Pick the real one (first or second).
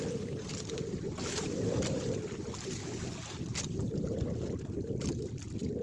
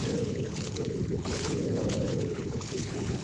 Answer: first